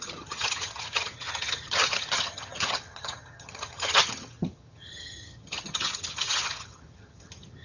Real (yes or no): no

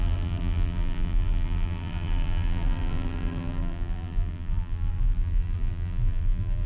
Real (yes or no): no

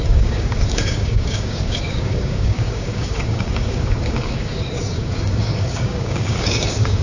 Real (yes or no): no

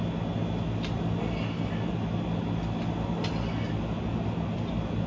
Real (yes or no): yes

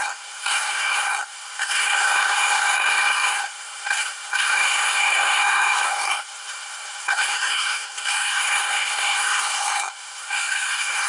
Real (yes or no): no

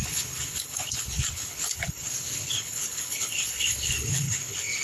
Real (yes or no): no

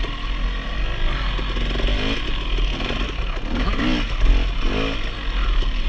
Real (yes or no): yes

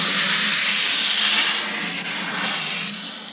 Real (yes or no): yes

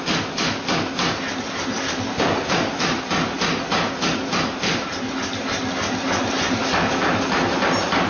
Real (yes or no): yes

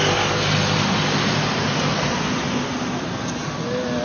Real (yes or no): yes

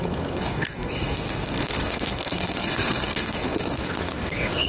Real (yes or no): no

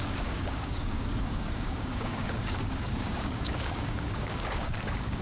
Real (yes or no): no